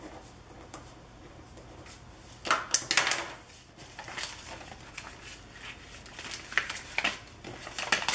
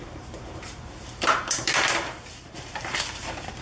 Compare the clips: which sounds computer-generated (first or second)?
second